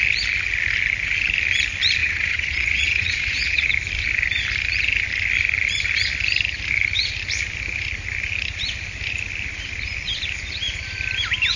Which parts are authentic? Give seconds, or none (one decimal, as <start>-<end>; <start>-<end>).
0.0-2.0; 3.7-11.6